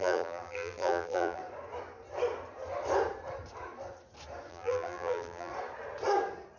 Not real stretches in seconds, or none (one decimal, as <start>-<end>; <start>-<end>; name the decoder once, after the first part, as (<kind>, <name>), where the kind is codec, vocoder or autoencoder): 0.0-1.4 (vocoder, BigVGAN v2); 4.5-5.5